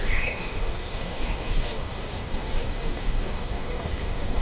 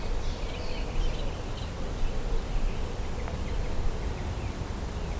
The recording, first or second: second